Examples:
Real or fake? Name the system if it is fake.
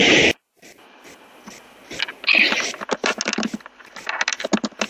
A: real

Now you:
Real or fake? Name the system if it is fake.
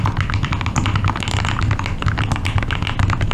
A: real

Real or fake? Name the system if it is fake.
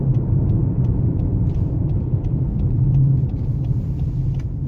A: fake, vocoder, BigVGAN v2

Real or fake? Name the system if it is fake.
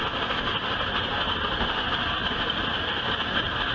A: real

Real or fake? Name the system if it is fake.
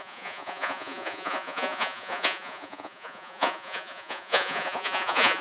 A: fake, vocoder, Vocos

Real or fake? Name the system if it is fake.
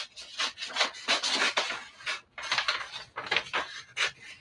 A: real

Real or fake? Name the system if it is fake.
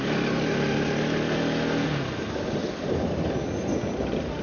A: real